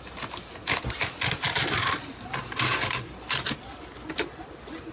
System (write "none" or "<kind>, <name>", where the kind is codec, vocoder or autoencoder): none